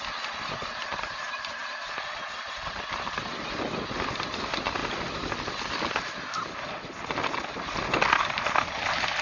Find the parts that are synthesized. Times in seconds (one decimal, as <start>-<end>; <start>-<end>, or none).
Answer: 1.6-2.4